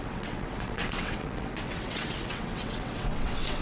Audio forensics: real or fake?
fake